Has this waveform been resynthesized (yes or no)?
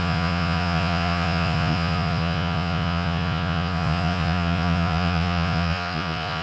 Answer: yes